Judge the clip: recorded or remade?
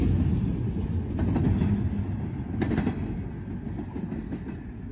recorded